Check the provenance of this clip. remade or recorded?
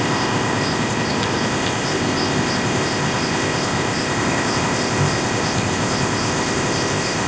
remade